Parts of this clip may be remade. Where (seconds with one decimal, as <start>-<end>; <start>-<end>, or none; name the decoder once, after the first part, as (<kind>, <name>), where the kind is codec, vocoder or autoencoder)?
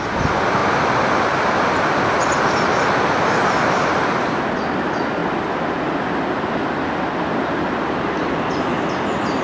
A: none